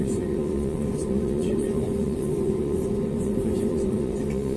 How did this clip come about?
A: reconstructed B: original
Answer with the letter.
A